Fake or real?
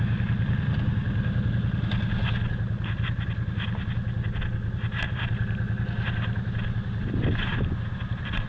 real